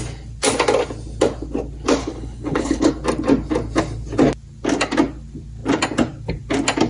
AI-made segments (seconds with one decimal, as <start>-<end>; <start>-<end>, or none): 2.0-2.9